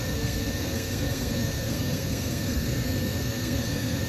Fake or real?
fake